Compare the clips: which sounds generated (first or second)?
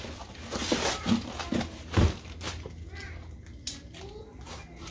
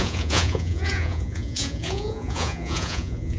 second